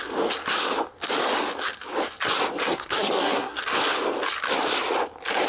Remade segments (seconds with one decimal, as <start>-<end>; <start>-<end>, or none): 2.6-3.6